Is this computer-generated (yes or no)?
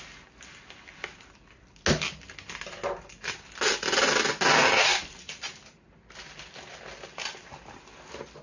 no